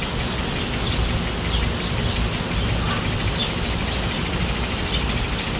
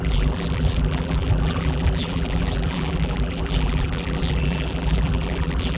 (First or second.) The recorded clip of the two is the first